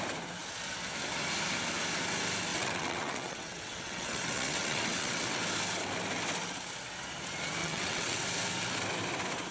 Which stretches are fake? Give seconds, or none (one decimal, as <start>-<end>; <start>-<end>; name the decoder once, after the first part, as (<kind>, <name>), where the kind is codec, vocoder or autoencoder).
2.5-5.4 (vocoder, WaveNeXt); 7.6-8.2